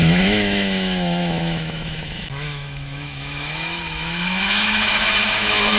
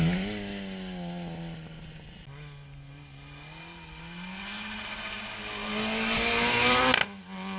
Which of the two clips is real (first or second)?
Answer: second